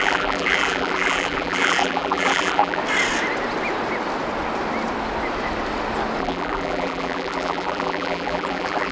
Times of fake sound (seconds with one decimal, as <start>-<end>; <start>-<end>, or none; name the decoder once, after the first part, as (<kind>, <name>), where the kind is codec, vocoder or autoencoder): 0.0-2.8 (vocoder, BigVGAN v2); 6.2-8.9